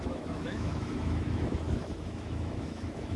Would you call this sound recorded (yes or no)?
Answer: no